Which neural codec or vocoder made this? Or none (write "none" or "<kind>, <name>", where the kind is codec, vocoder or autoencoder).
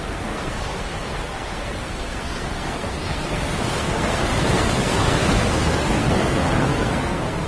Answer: codec, SNAC